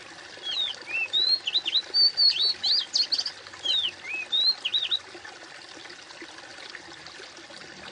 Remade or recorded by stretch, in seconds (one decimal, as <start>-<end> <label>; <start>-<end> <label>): 0.0-7.9 recorded